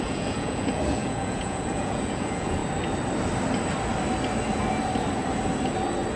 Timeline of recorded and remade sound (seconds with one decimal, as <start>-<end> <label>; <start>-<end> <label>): 0.0-2.6 remade; 2.6-6.2 recorded